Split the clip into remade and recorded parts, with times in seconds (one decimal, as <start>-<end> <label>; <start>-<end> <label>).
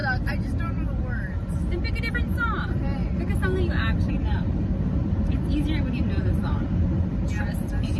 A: 0.0-2.1 recorded; 2.1-3.0 remade; 3.0-4.1 recorded; 4.1-4.7 remade; 4.7-6.0 recorded; 6.0-8.0 remade